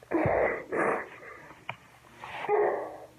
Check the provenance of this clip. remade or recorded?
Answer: recorded